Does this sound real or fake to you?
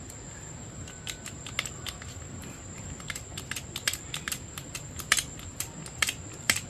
real